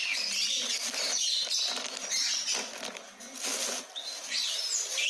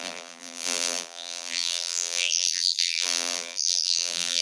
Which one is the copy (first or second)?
second